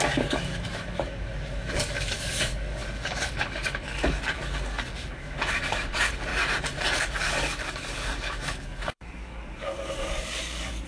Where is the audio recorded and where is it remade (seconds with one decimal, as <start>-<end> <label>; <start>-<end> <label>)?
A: 0.0-6.3 remade; 6.3-6.8 recorded; 6.8-10.9 remade

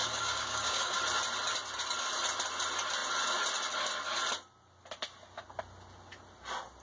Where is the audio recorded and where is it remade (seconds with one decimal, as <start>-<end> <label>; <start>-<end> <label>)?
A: 0.0-1.0 remade; 1.0-6.8 recorded